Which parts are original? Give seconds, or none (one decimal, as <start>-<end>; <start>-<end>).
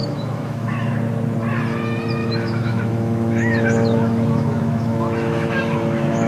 0.9-2.2